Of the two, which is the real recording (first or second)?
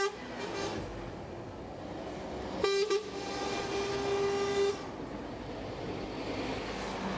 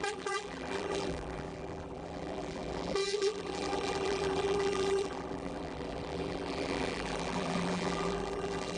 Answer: first